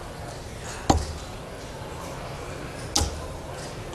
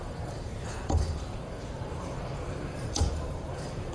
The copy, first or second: second